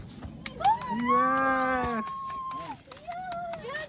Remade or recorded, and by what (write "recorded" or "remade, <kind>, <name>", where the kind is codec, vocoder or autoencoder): recorded